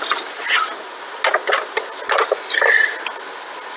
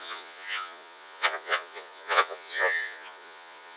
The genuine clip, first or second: first